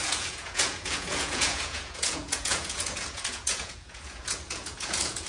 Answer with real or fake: fake